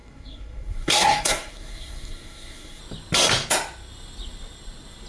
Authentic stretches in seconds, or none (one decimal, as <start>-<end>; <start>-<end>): 2.8-5.1